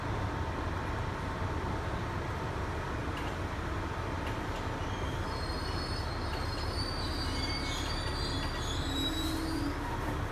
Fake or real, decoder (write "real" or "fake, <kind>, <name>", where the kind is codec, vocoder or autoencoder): real